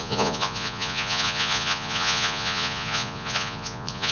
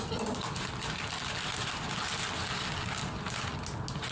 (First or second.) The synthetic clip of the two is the first